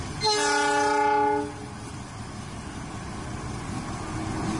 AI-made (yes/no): no